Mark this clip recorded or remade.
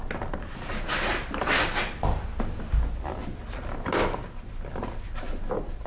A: recorded